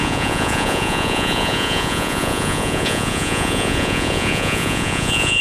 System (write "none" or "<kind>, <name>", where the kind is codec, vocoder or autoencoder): vocoder, Vocos